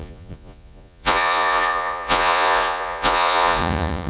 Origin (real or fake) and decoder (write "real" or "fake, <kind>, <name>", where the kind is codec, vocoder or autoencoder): fake, vocoder, Vocos